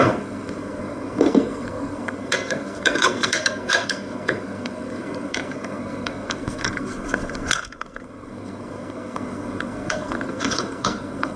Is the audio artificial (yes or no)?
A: yes